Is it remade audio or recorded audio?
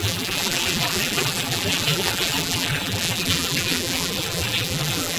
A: remade